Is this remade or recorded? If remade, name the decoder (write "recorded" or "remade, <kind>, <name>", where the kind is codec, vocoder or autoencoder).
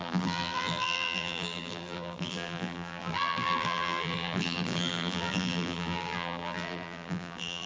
remade, vocoder, BigVGAN v2